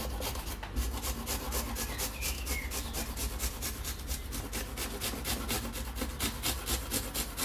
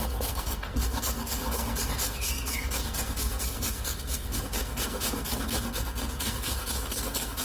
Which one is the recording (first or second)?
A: first